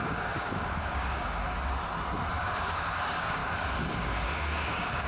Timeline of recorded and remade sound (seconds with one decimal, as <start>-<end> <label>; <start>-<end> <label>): 0.0-1.4 remade; 1.4-2.3 recorded; 2.3-3.4 remade; 3.4-4.0 recorded; 4.0-5.1 remade